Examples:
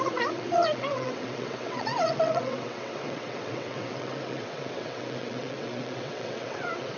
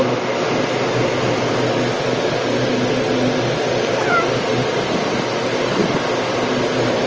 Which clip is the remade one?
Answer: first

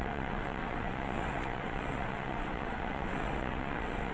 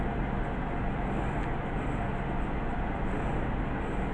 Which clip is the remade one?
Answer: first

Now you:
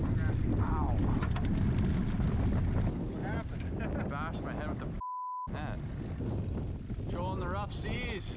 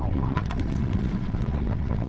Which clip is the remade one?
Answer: second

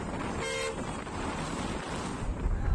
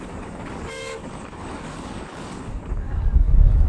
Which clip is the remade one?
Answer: second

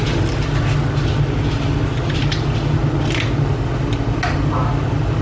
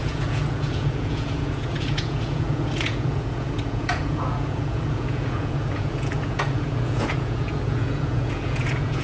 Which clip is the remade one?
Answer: second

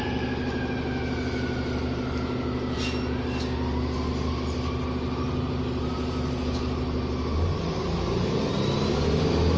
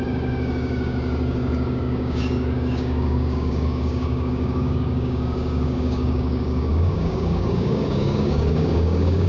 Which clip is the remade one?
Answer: second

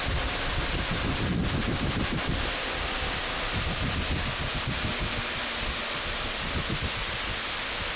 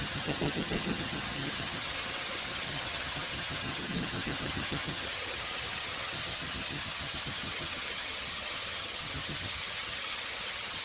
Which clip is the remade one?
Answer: second